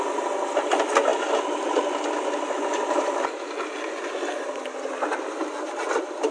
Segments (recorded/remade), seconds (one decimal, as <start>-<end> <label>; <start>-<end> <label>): 0.0-6.3 recorded